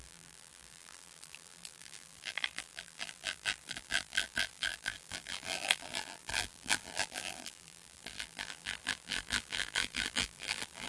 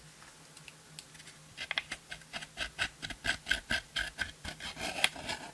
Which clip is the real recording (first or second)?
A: second